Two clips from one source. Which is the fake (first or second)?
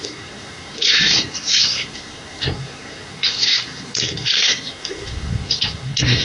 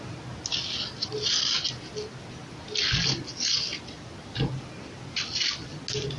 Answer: first